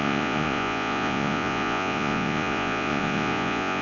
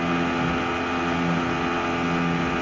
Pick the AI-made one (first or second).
first